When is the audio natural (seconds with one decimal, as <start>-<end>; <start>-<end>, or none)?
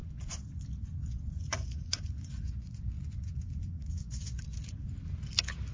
0.6-1.0; 4.4-5.7